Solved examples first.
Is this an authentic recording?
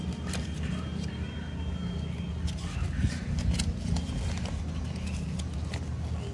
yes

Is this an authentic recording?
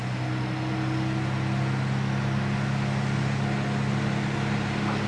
yes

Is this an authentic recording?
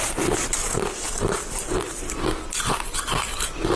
yes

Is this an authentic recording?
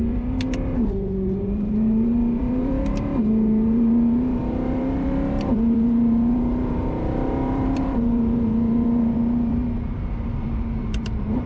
no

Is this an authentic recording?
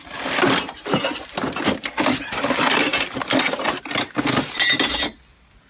yes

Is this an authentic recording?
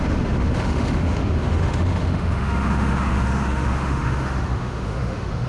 no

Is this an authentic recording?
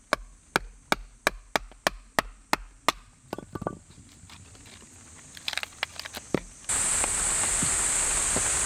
yes